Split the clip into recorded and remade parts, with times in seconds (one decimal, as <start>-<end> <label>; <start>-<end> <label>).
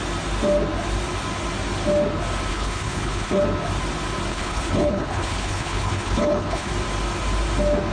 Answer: 0.0-2.5 recorded; 2.5-3.4 remade; 3.4-4.3 recorded; 4.3-6.7 remade; 6.7-7.9 recorded